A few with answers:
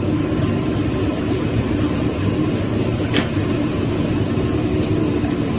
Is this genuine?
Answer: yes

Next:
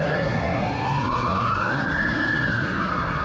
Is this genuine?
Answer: no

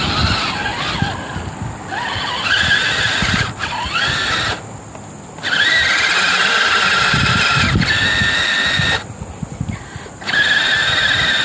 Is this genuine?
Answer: yes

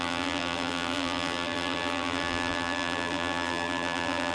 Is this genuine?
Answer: no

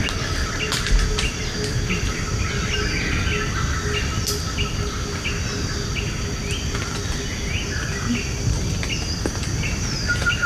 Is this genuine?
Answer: yes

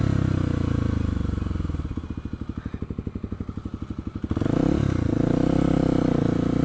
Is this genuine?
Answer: yes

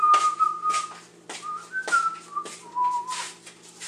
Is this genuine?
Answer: yes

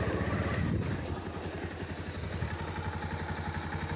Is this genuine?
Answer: yes